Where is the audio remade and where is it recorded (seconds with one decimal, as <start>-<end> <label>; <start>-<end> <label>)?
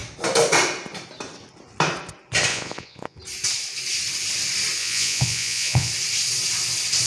0.0-2.5 recorded; 2.5-3.2 remade; 3.2-4.8 recorded; 4.8-5.9 remade; 5.9-7.1 recorded